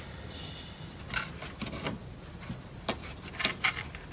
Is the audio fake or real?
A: real